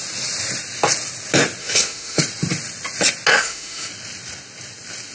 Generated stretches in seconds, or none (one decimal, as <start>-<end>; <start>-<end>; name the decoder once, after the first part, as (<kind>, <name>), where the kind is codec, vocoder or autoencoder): 1.6-2.2 (autoencoder, DAC-VAE); 3.3-3.9